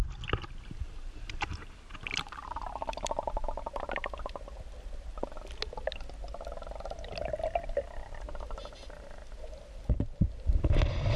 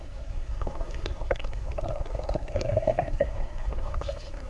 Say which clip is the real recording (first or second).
first